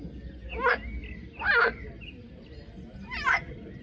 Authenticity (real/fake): real